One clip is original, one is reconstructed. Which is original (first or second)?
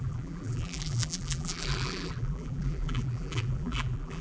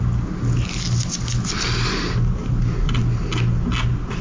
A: second